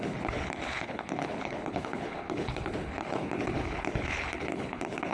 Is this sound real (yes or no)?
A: no